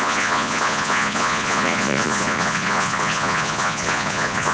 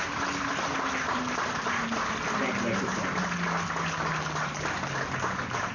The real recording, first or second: second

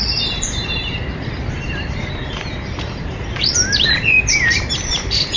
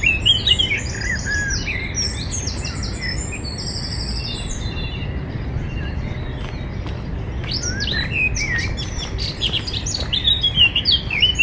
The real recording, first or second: second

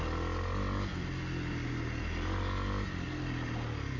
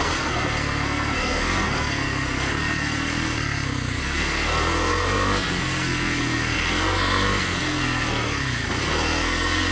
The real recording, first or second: first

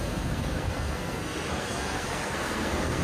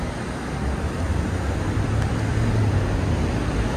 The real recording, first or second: second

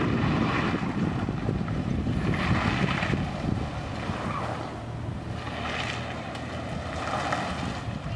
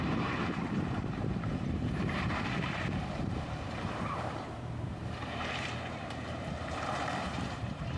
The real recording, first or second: first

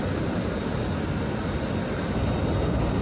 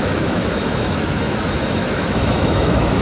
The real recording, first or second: first